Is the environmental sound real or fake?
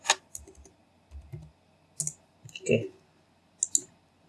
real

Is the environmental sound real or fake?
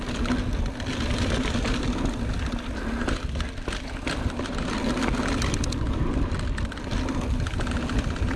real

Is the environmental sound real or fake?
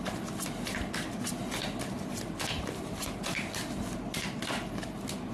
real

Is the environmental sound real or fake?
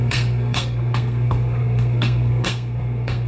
fake